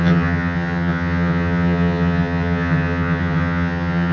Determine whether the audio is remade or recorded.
remade